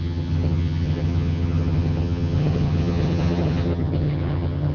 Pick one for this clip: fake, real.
fake